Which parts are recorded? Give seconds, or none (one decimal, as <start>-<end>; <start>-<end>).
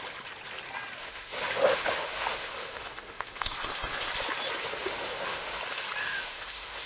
0.0-1.0; 4.1-4.6; 5.6-6.0